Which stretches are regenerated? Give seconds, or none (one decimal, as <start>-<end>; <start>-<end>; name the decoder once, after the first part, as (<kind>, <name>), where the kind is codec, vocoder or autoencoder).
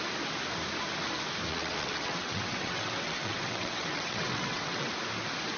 1.5-4.9 (vocoder, WaveNeXt)